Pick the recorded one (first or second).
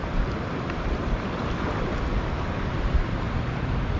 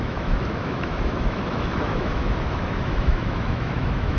first